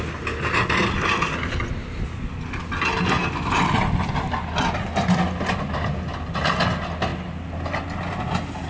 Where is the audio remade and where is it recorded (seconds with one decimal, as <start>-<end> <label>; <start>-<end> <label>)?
0.0-8.7 recorded